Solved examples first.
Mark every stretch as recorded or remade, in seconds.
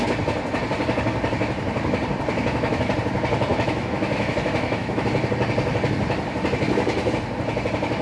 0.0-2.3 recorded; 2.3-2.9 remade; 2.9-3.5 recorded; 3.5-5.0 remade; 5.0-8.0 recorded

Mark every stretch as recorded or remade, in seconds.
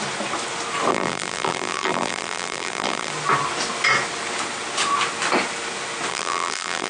0.0-0.9 recorded; 0.9-3.1 remade; 3.1-6.1 recorded; 6.1-6.9 remade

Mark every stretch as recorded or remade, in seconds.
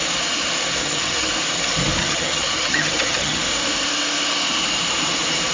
0.0-0.8 recorded; 0.8-1.3 remade; 1.3-2.0 recorded; 2.0-3.4 remade; 3.4-5.5 recorded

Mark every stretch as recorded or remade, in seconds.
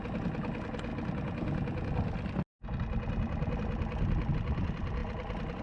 0.0-5.6 recorded